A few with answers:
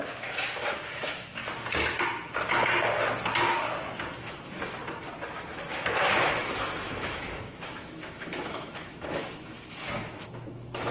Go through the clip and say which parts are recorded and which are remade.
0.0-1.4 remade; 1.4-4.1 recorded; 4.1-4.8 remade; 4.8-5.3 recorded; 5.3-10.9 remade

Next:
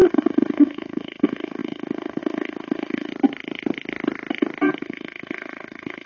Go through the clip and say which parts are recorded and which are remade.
0.0-3.1 remade; 3.1-4.8 recorded; 4.8-6.1 remade